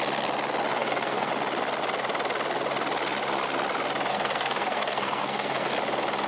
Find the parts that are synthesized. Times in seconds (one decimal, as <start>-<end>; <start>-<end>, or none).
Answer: 0.7-1.3; 4.1-5.7